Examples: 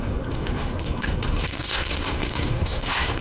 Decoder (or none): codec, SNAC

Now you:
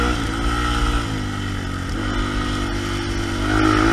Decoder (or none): none